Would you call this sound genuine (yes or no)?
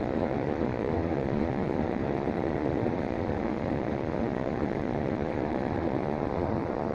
no